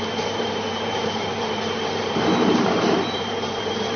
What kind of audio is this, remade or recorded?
remade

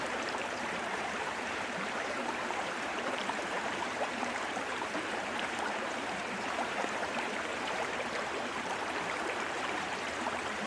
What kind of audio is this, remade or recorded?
remade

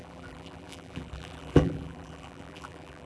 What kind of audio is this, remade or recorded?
remade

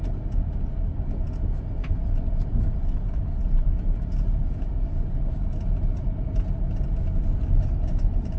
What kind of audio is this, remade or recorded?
recorded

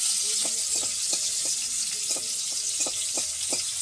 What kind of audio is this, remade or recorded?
recorded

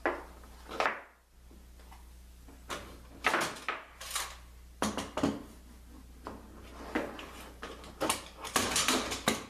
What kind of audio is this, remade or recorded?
recorded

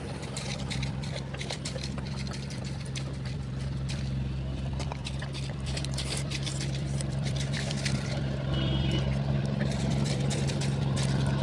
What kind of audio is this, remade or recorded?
remade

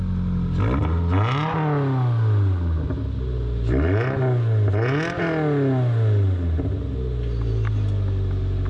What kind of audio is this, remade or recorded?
recorded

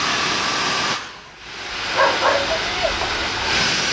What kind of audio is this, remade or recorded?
recorded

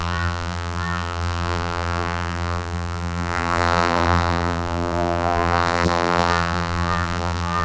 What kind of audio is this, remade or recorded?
remade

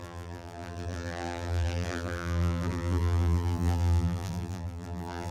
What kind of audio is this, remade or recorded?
remade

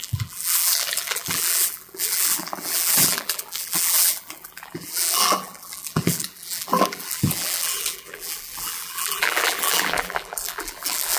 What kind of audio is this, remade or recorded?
remade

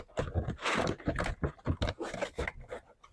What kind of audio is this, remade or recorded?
recorded